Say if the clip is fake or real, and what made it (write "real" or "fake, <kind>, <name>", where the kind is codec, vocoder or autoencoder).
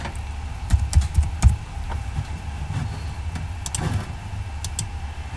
real